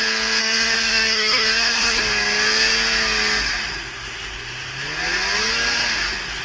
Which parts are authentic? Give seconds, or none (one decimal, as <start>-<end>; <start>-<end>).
0.0-0.4; 2.0-6.4